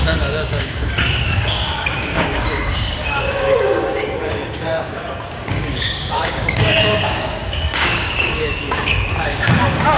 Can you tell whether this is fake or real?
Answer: fake